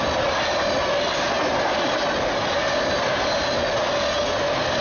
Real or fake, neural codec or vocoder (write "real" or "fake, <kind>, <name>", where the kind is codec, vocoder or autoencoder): real